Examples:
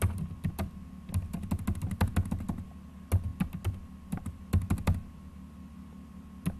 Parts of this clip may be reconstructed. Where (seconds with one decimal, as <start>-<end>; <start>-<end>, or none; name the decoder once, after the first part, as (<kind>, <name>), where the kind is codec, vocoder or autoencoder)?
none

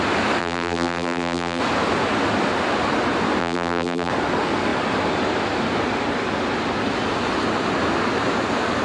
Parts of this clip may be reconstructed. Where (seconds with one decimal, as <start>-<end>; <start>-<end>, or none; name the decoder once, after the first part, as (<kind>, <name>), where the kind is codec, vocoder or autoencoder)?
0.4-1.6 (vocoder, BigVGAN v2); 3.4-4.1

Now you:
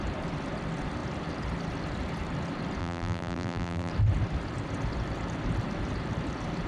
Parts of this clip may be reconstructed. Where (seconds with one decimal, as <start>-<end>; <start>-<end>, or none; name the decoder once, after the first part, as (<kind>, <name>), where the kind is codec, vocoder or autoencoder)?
2.8-3.9 (vocoder, BigVGAN v2)

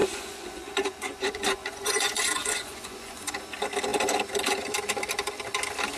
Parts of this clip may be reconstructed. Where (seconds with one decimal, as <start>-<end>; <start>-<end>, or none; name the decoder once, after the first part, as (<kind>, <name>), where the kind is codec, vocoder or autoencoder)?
0.0-3.3 (vocoder, Vocos)

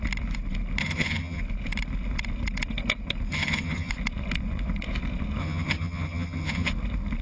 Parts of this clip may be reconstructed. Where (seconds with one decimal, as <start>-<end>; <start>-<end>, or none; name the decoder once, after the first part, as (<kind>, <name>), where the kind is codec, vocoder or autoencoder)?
0.8-1.4 (vocoder, HiFi-GAN); 3.3-3.9; 5.4-6.7

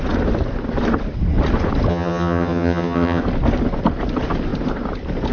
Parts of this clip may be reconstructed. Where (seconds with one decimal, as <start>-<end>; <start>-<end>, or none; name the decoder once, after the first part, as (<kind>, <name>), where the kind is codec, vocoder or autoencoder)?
1.9-3.2 (vocoder, HiFi-GAN)

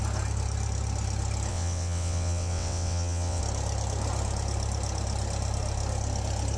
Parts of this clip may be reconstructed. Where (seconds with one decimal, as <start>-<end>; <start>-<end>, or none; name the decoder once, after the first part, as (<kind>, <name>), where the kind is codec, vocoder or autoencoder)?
1.5-3.4 (vocoder, WaveNeXt)